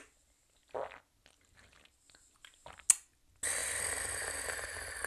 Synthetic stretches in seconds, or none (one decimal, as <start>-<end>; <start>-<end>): none